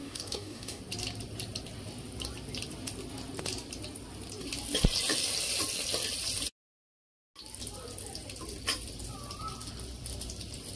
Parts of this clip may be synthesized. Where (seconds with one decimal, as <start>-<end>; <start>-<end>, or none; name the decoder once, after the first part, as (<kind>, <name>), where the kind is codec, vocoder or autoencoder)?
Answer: 0.0-0.8 (codec, DAC)